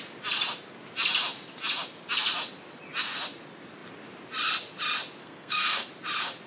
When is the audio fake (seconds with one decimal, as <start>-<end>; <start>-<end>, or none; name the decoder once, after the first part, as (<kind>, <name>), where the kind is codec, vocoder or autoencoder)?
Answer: 5.2-5.9 (codec, SNAC)